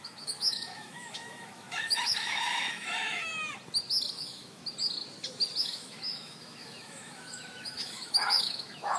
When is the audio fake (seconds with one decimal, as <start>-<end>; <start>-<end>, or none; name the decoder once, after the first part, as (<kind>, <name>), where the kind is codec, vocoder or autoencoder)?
0.0-3.3 (autoencoder, DAC-VAE); 4.1-4.6; 5.6-9.0